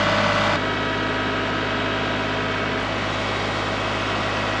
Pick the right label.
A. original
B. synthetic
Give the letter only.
A